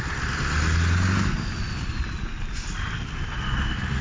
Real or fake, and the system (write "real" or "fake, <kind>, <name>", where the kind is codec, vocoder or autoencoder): real